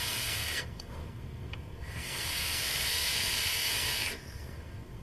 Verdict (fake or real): fake